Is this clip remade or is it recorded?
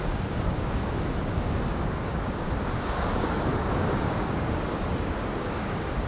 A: remade